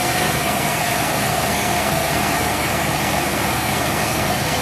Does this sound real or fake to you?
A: fake